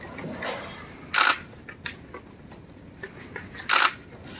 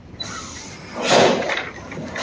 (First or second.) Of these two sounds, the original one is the first